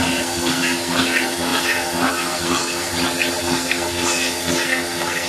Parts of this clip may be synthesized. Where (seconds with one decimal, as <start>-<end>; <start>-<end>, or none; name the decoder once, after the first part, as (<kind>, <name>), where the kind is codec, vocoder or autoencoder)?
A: 0.0-2.9 (codec, SNAC); 3.4-5.3